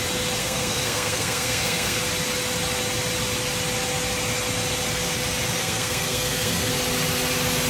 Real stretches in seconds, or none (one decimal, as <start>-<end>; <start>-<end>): 0.0-0.4; 2.0-5.6; 6.7-7.7